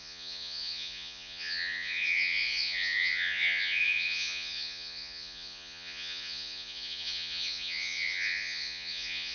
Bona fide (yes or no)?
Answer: no